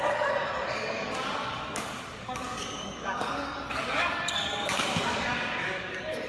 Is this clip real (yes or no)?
no